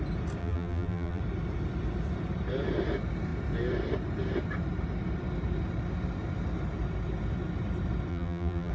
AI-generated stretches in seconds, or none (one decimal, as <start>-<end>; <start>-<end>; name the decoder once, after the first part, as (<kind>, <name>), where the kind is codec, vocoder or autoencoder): 0.4-1.2 (vocoder, BigVGAN v2); 8.1-8.7